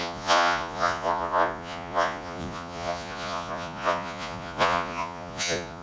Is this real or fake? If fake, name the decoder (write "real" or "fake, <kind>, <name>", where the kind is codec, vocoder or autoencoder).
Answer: fake, vocoder, Vocos